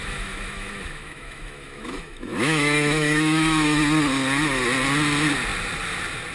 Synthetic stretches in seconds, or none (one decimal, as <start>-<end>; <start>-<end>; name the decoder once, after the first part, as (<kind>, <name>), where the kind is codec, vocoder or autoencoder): 0.0-3.8 (autoencoder, DAC-VAE)